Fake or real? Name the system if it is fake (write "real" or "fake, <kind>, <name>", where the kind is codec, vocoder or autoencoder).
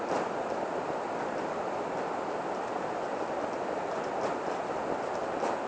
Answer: real